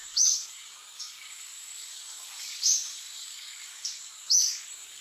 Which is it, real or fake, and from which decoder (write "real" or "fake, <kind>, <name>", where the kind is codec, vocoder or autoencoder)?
fake, codec, DAC